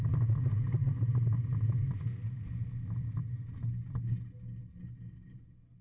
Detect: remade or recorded recorded